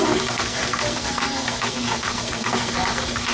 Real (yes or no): no